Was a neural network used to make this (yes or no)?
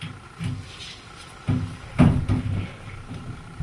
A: no